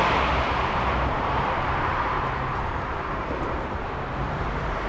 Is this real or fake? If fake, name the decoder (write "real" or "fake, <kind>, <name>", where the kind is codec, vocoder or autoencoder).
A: fake, vocoder, BigVGAN v2